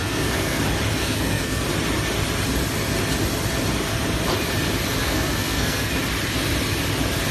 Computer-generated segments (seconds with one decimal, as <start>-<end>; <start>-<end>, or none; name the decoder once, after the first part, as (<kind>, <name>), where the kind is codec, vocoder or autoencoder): 0.0-0.6 (codec, SNAC); 1.0-1.6; 5.0-5.9

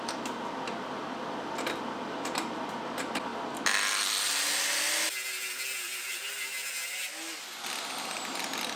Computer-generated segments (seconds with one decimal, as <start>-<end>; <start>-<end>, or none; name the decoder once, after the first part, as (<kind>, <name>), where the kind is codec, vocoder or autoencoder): none

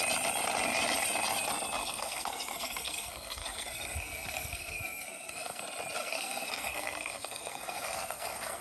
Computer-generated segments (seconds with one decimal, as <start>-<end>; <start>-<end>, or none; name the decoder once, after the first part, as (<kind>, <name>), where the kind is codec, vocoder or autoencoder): 1.8-5.6 (codec, SNAC); 6.0-8.6